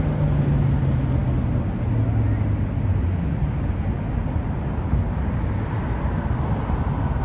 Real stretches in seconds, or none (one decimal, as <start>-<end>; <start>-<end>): 0.0-7.2